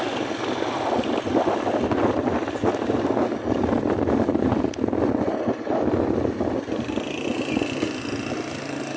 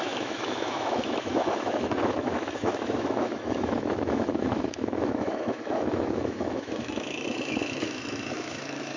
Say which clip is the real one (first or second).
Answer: first